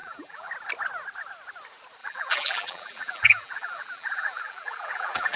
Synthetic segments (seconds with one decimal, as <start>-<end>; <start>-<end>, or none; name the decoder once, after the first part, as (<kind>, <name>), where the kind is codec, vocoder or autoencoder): 0.0-0.5 (vocoder, BigVGAN v2); 2.0-5.4